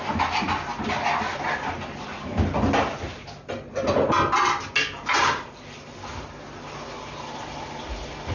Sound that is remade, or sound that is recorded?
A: recorded